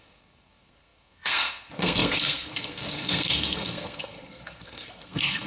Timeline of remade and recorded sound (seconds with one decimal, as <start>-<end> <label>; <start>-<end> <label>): 0.0-5.5 remade